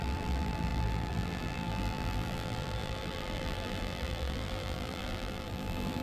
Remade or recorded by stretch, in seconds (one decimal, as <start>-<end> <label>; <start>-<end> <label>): 0.0-6.0 remade